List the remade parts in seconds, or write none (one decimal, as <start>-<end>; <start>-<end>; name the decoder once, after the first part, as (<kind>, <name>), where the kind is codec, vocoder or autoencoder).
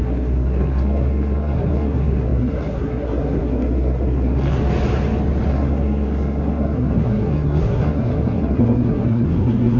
0.0-4.6 (codec, SNAC); 5.5-9.8